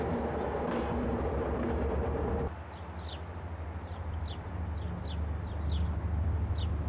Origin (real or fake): real